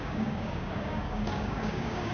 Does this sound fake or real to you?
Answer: fake